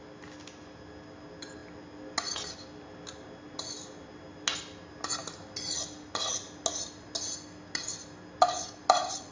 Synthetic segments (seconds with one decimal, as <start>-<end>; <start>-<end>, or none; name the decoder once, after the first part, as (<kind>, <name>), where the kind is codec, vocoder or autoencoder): none